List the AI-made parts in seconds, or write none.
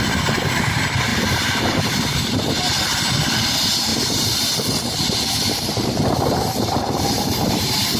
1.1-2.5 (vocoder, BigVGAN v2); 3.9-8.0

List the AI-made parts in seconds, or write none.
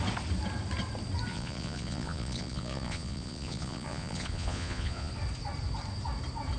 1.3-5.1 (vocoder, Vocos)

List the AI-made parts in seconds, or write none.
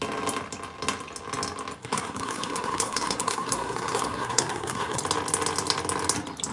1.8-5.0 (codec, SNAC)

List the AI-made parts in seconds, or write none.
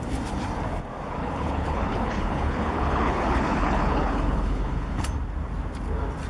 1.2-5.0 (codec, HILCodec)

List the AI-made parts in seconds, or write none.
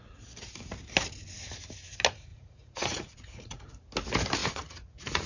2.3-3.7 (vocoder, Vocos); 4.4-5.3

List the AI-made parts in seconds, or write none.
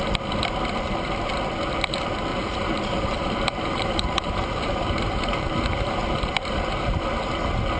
2.3-7.0 (vocoder, BigVGAN v2)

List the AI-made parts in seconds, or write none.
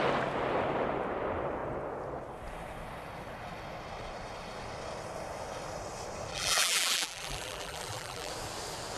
6.3-8.3 (vocoder, BigVGAN v2)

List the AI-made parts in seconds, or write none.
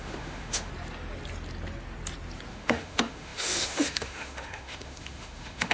0.0-0.7 (autoencoder, DAC-VAE); 2.5-5.7